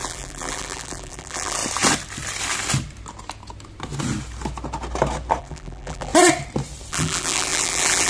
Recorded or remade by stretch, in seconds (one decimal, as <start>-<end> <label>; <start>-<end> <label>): 0.0-1.6 remade; 1.6-5.4 recorded; 5.4-6.1 remade; 6.1-6.9 recorded; 6.9-8.1 remade